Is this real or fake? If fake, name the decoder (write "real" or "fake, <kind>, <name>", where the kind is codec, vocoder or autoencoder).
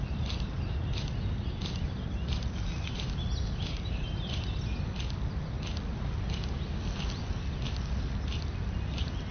real